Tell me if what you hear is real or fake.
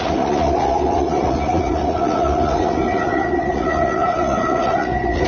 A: fake